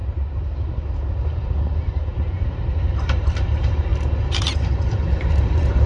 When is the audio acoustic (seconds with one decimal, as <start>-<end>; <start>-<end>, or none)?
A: 0.0-1.1; 3.9-4.7